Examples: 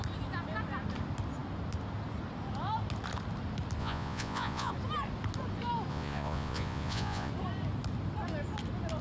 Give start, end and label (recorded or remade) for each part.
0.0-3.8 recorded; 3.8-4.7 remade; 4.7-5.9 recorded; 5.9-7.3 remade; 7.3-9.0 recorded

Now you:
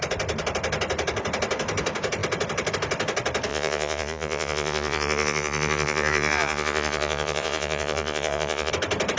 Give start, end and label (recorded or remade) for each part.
0.0-3.5 recorded; 3.5-8.7 remade; 8.7-9.2 recorded

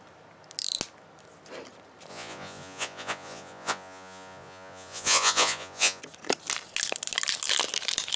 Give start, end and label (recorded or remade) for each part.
0.0-2.1 recorded; 2.1-6.0 remade; 6.0-8.2 recorded

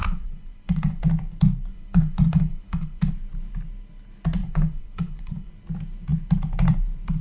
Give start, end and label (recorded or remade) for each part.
0.0-1.0 remade; 1.0-1.7 recorded; 1.7-3.0 remade; 3.0-4.4 recorded; 4.4-5.5 remade; 5.5-7.2 recorded

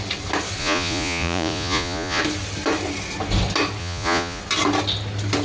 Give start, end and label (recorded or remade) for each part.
0.0-0.6 recorded; 0.6-2.2 remade; 2.2-3.8 recorded; 3.8-4.4 remade; 4.4-5.4 recorded

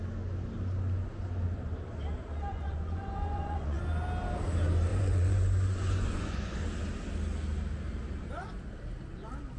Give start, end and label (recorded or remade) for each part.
0.0-2.5 recorded; 2.5-3.8 remade; 3.8-4.9 recorded; 4.9-6.6 remade; 6.6-9.6 recorded

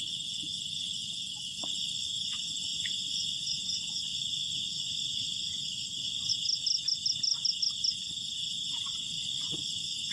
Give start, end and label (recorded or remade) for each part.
0.0-6.3 remade; 6.3-9.0 recorded; 9.0-10.1 remade